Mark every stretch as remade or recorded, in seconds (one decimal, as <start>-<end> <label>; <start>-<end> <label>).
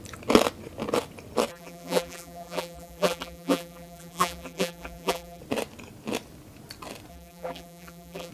0.0-1.5 recorded; 1.5-5.4 remade; 5.4-7.1 recorded; 7.1-8.3 remade